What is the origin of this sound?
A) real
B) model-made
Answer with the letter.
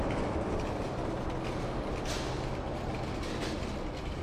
A